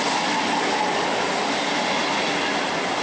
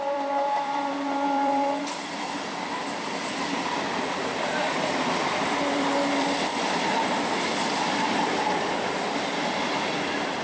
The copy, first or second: second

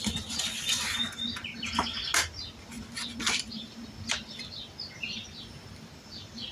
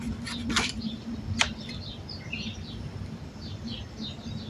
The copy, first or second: second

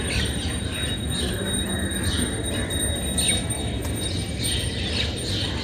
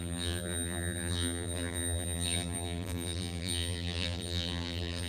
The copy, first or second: second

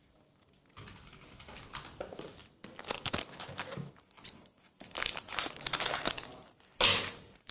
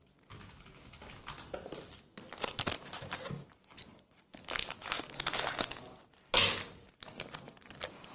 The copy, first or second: first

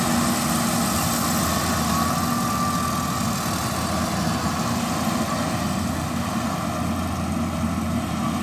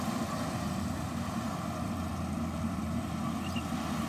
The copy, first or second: second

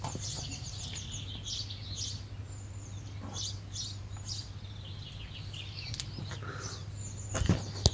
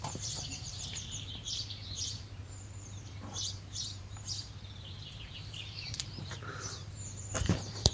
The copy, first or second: second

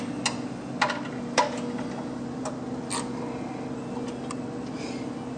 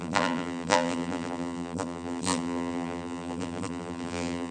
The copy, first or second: second